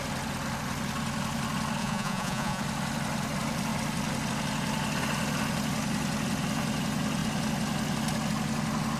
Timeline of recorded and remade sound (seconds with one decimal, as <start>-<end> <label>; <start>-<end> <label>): 0.0-1.8 recorded; 1.8-2.6 remade; 2.6-9.0 recorded